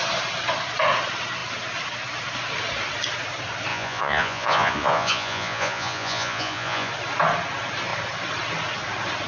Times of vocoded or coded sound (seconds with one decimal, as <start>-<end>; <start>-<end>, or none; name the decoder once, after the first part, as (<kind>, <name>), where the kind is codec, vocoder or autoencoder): 3.7-6.9 (vocoder, Vocos)